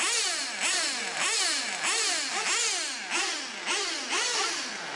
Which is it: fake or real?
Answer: real